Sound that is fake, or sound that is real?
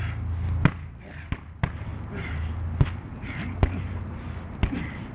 real